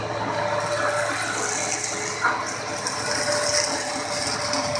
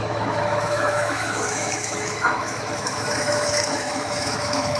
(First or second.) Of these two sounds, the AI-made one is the second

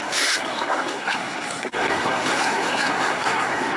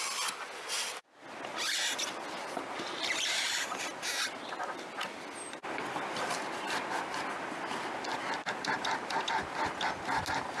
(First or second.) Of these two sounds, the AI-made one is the first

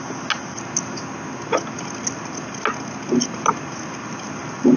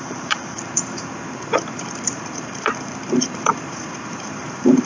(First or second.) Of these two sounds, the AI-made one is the second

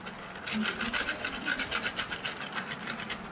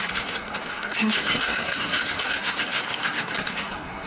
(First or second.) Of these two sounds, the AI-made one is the second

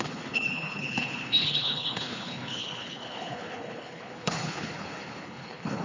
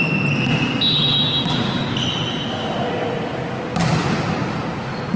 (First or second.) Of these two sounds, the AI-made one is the first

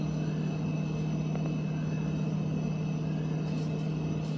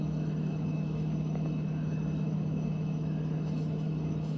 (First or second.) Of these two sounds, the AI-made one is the second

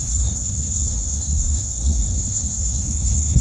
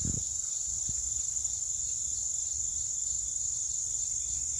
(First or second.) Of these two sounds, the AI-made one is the first